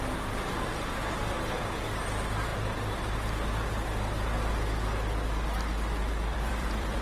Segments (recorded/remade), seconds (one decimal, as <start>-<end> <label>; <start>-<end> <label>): 0.0-2.5 recorded; 2.5-3.7 remade; 3.7-6.3 recorded; 6.3-7.0 remade

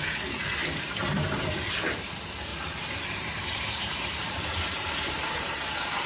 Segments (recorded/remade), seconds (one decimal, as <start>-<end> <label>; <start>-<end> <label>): 0.0-0.6 recorded; 0.6-1.7 remade; 1.7-2.5 recorded; 2.5-6.1 remade